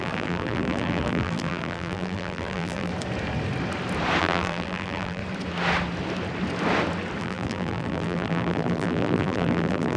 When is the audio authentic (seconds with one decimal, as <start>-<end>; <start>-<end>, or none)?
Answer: 2.9-4.2; 5.2-7.2